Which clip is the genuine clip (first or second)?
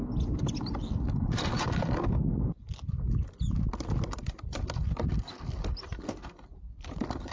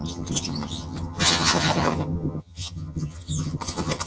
first